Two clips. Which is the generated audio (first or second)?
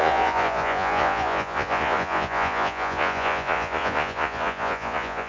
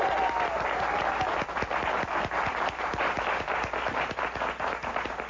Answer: first